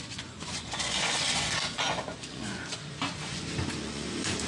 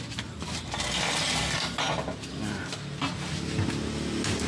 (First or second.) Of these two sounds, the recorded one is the second